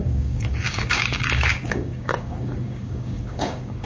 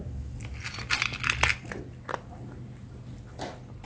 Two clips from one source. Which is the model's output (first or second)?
first